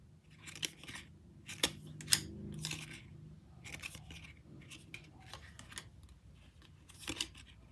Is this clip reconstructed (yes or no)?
no